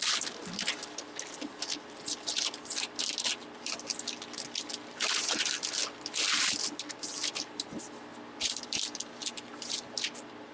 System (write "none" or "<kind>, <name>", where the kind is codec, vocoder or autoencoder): none